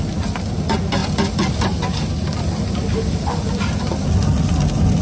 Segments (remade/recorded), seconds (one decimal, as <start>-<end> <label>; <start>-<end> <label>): 0.0-5.0 recorded